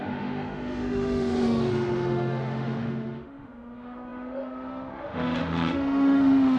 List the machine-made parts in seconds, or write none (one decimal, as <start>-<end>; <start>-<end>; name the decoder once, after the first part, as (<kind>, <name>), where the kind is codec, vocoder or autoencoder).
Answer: 0.0-6.6 (autoencoder, DAC-VAE)